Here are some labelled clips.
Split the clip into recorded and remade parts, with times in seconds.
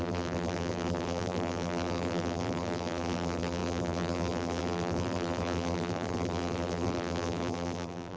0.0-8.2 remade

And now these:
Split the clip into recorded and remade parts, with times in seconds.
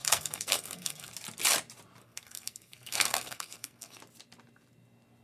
0.0-1.1 remade; 1.1-2.0 recorded; 2.0-4.0 remade; 4.0-5.2 recorded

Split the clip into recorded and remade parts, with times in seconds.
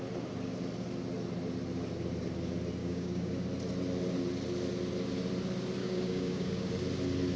0.0-2.8 recorded; 2.8-3.3 remade; 3.3-5.8 recorded; 5.8-6.7 remade; 6.7-7.4 recorded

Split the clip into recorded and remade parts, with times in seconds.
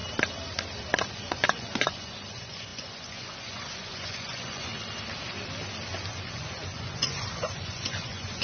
0.0-1.1 recorded; 1.1-4.7 remade; 4.7-6.1 recorded; 6.1-8.4 remade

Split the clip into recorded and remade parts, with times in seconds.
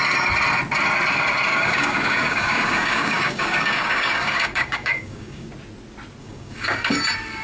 0.0-1.5 recorded; 1.5-5.5 remade; 5.5-6.2 recorded; 6.2-6.9 remade; 6.9-7.4 recorded